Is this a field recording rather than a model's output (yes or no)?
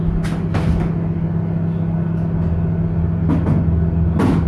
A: yes